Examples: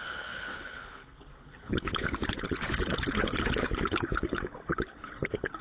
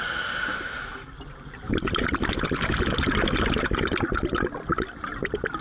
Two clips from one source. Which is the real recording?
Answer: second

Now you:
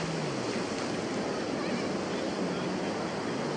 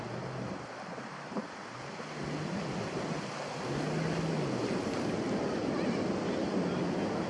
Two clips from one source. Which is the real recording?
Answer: first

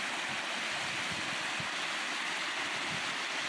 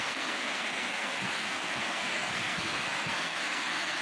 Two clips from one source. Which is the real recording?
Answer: first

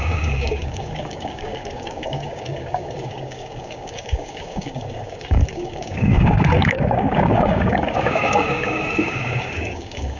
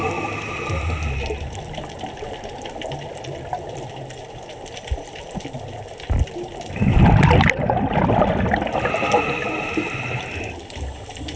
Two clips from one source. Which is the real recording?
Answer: second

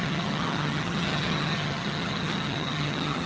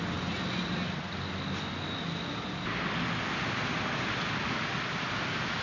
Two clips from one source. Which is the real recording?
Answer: second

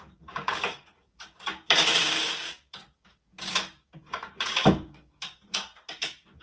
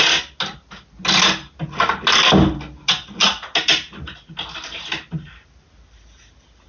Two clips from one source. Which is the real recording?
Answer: second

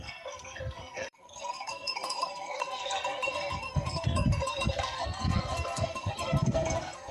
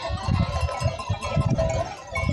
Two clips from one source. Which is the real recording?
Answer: second